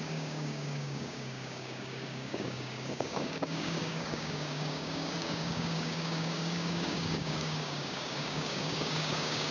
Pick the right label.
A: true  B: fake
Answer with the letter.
B